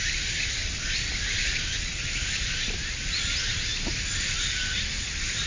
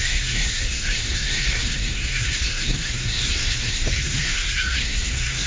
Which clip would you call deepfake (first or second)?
second